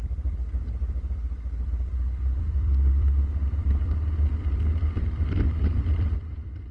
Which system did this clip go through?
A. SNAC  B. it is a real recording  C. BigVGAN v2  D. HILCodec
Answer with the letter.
C